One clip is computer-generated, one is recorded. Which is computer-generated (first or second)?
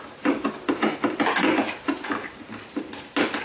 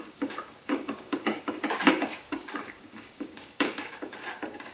second